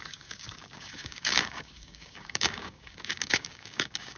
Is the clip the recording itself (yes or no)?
no